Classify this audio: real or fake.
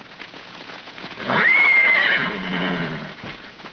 fake